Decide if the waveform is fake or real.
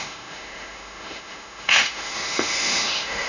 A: fake